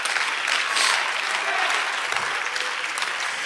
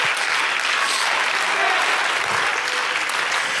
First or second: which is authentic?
second